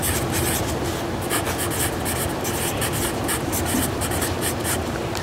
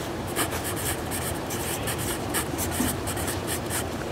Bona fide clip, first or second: first